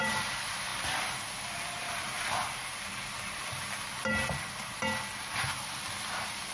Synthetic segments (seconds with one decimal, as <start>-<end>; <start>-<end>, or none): none

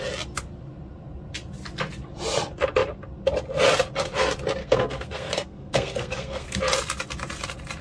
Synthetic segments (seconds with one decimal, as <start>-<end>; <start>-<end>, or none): 4.6-6.6

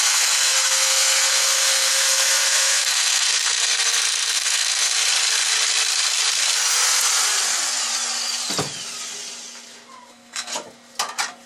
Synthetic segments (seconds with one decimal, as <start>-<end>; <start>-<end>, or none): 0.0-4.9; 10.1-10.5

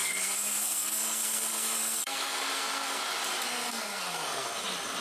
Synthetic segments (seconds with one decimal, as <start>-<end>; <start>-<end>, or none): 0.0-3.0; 3.5-4.6

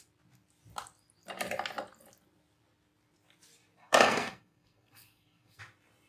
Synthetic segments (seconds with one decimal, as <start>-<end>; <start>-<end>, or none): 3.8-5.6

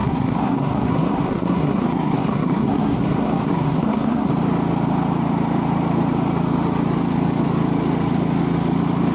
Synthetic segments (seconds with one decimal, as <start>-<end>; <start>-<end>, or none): 0.0-4.3